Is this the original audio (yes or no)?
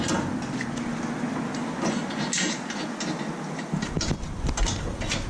yes